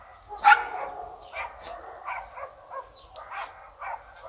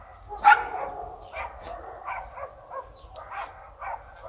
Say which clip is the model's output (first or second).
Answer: second